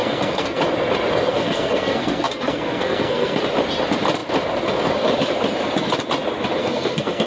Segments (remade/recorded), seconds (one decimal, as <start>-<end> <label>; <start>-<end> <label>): 0.0-0.6 remade; 0.6-1.3 recorded; 1.3-3.4 remade; 3.4-6.6 recorded; 6.6-7.3 remade